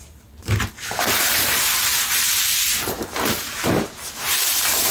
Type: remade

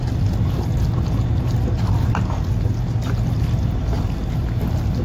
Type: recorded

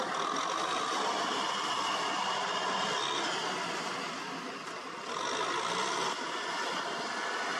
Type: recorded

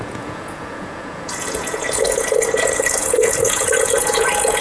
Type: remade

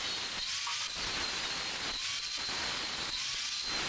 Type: recorded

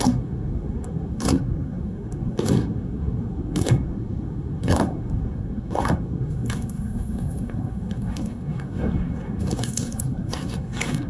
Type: remade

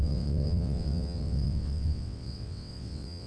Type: remade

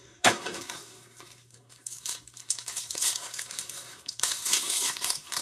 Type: remade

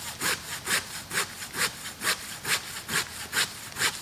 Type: recorded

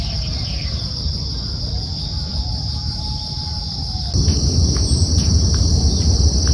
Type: recorded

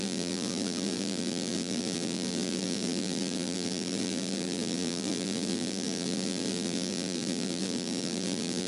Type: remade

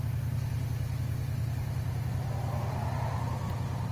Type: recorded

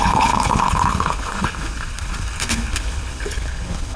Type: remade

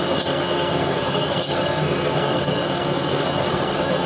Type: remade